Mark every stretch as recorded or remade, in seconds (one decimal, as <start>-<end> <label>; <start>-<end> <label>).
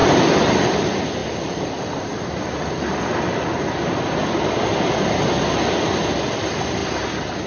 0.0-0.7 remade; 0.7-1.2 recorded; 1.2-2.2 remade; 2.2-7.5 recorded